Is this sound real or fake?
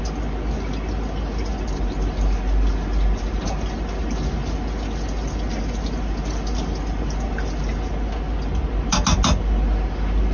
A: real